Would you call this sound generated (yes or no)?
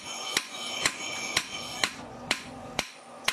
yes